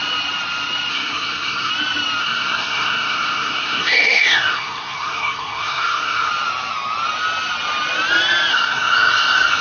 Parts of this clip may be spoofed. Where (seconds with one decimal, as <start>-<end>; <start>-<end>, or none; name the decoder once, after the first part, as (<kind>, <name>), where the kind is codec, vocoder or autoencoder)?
0.9-1.7 (codec, SNAC); 2.2-6.3; 8.5-9.6

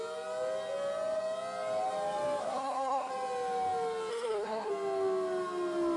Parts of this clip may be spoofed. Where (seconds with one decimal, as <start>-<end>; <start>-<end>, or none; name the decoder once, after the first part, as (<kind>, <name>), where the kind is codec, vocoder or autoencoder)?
2.4-3.1 (codec, SNAC); 4.1-4.7

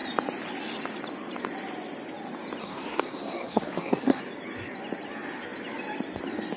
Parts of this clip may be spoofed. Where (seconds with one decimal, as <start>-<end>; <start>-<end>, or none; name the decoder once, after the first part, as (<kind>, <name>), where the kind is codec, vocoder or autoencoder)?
2.6-4.2 (codec, SNAC)

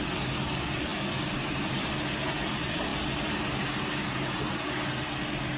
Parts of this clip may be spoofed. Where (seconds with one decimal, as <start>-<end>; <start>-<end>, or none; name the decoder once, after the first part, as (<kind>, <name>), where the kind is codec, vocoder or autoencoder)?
none